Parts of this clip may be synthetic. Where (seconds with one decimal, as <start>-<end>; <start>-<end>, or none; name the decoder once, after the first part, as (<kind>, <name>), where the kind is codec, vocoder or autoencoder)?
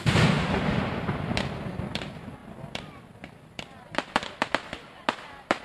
none